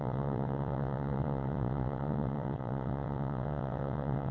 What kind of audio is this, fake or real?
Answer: fake